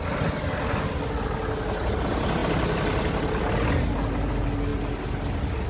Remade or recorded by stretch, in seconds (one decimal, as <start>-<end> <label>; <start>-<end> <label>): 0.0-5.7 recorded